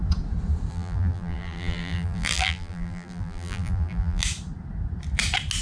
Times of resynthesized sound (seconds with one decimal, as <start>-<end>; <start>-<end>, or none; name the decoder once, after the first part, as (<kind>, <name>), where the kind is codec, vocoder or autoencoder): 0.7-4.2 (vocoder, BigVGAN v2)